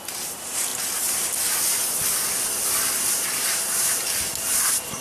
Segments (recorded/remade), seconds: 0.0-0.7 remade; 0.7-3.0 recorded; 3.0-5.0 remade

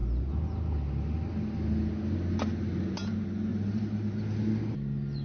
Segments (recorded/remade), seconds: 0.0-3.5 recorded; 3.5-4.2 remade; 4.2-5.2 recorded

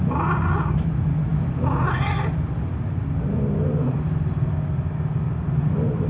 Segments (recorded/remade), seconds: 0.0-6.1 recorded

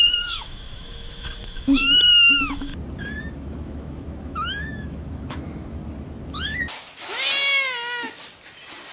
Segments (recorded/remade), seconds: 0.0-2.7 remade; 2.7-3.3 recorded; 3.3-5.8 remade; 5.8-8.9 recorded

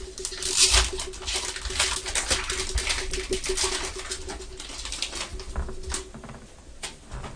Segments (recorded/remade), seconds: 0.0-7.4 recorded

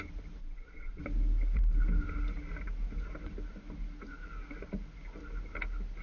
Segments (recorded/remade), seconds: 0.0-0.4 recorded; 0.4-1.0 remade; 1.0-6.0 recorded